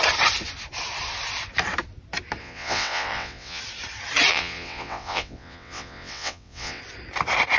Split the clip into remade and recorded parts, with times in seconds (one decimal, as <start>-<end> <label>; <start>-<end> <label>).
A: 0.0-2.4 recorded; 2.4-3.6 remade; 3.6-4.3 recorded; 4.3-6.8 remade; 6.8-7.6 recorded